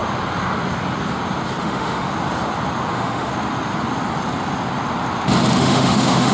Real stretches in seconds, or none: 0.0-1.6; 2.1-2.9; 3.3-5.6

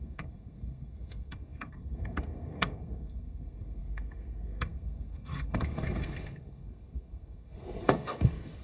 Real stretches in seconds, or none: none